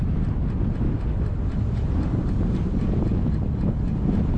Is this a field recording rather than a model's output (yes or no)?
yes